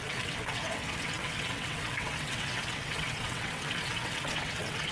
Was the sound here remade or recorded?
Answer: remade